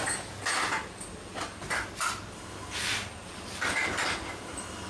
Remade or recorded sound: recorded